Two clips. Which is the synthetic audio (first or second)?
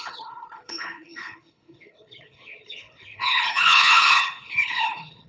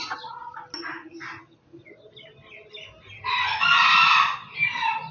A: first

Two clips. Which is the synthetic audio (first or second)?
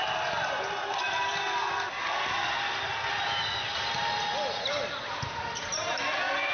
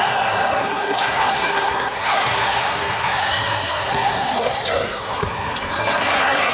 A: second